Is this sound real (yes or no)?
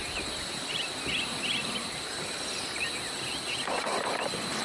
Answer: yes